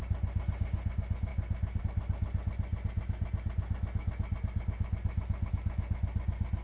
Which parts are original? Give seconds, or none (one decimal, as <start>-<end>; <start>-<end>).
0.0-6.6

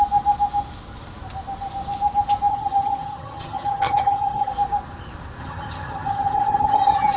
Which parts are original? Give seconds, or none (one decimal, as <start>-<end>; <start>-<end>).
0.0-2.5; 4.5-5.4

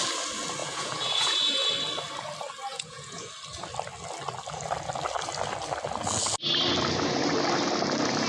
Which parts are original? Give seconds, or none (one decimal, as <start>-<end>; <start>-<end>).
0.0-0.6; 1.7-2.7; 3.3-8.3

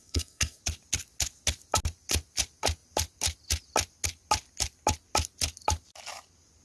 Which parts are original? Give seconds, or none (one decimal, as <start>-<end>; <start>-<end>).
0.6-6.6

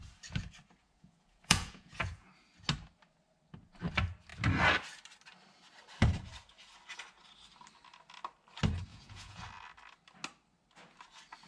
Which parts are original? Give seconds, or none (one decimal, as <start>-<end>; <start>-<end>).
0.0-0.8; 2.3-8.9; 9.4-11.5

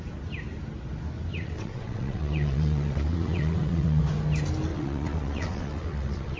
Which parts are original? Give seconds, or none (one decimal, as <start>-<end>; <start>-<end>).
0.0-1.3; 4.0-4.7